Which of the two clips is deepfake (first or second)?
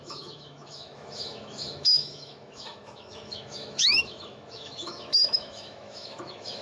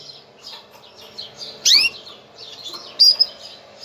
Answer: first